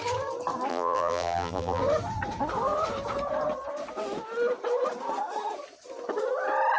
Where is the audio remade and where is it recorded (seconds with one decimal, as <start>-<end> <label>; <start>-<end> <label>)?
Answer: 0.0-0.7 recorded; 0.7-1.8 remade; 1.8-6.8 recorded